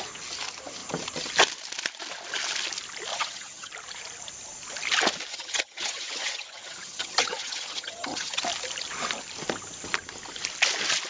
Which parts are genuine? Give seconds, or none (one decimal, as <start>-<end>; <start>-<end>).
0.0-3.1; 3.7-5.3; 8.4-11.1